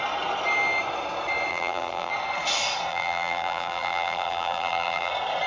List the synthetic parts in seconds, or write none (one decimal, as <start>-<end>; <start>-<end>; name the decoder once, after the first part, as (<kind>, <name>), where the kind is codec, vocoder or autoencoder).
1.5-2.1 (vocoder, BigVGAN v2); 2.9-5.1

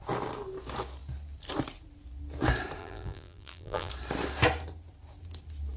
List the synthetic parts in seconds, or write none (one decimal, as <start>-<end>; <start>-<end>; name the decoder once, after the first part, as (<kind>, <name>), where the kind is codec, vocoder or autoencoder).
2.8-3.9 (vocoder, BigVGAN v2)

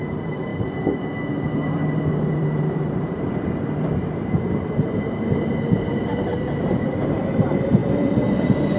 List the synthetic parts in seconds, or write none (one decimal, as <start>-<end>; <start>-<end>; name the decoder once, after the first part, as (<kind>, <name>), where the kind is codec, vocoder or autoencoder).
0.0-0.5 (vocoder, BigVGAN v2); 2.3-8.8

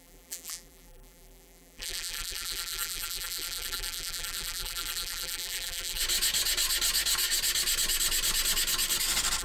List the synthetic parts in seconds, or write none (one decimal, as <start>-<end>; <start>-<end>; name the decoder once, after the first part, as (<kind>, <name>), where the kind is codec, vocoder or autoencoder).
0.0-6.0 (vocoder, BigVGAN v2)

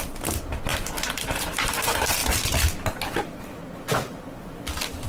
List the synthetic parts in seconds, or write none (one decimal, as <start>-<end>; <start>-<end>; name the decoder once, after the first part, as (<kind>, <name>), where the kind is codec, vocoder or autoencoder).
0.0-2.2 (vocoder, BigVGAN v2)

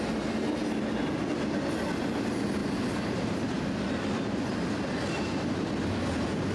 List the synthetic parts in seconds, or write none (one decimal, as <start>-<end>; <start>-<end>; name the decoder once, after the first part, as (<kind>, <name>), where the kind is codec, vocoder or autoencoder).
none

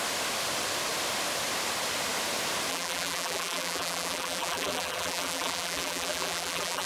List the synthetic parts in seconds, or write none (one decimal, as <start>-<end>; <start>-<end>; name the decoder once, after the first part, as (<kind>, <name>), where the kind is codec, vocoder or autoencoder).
2.7-6.9 (vocoder, BigVGAN v2)